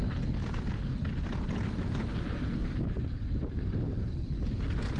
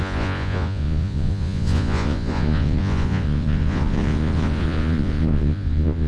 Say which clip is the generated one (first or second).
second